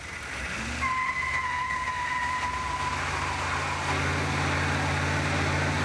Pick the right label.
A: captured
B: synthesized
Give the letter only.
A